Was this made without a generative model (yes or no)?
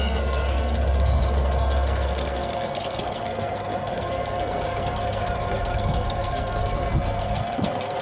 no